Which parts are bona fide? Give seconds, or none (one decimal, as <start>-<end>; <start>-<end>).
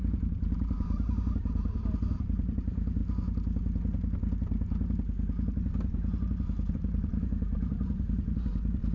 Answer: 3.0-6.7